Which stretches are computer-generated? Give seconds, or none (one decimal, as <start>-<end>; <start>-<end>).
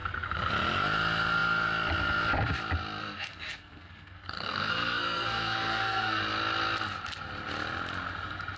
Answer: 0.0-0.5; 3.0-6.2